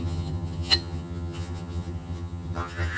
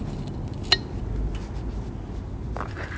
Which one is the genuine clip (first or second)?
second